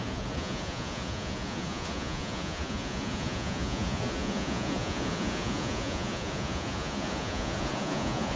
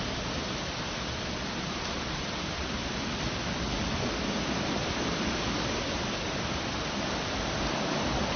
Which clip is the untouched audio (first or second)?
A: second